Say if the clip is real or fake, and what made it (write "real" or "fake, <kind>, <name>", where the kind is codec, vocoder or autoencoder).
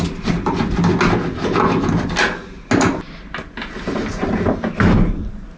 real